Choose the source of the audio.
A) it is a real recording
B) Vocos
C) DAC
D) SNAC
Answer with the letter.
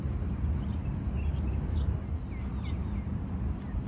A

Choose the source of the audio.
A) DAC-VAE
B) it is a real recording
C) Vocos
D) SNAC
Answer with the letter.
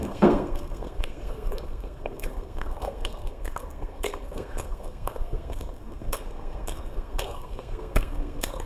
D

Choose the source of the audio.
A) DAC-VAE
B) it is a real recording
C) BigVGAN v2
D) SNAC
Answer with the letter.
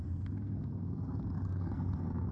D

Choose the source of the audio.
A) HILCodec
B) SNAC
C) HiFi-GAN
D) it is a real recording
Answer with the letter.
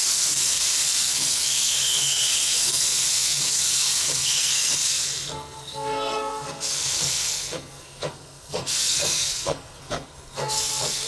B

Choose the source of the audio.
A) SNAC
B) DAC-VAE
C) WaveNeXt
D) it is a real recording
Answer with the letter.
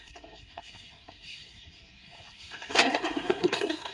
A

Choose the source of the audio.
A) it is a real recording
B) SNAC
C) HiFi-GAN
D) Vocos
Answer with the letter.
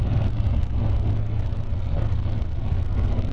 B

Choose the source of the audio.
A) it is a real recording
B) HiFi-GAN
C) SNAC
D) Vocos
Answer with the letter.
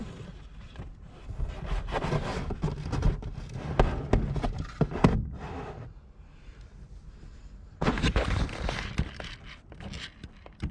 A